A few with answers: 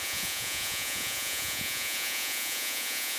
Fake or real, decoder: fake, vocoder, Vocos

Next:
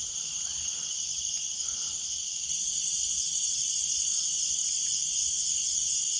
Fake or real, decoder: real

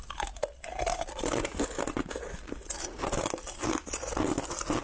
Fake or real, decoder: real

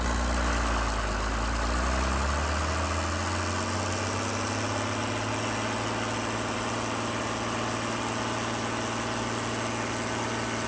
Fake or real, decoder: real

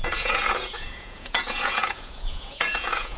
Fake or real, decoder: fake, vocoder, Vocos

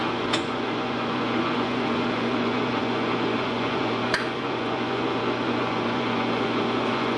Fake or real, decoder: fake, vocoder, Vocos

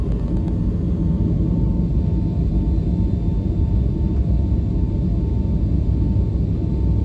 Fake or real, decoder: real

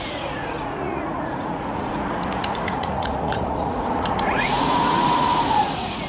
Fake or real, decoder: fake, vocoder, Vocos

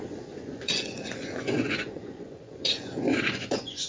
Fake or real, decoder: fake, vocoder, Vocos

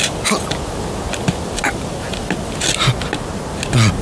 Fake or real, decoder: real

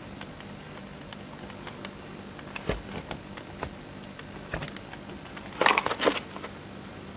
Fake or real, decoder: real